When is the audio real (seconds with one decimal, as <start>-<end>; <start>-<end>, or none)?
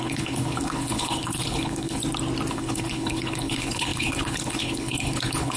2.0-2.5